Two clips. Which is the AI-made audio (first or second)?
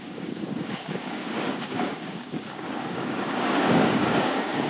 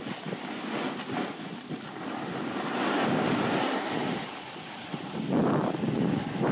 first